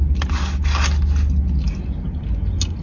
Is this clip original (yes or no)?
yes